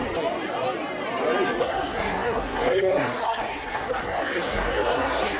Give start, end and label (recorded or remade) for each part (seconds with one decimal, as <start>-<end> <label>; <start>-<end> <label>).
0.0-1.6 recorded; 1.6-5.4 remade